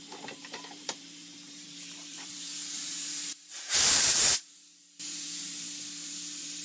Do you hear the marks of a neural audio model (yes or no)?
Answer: yes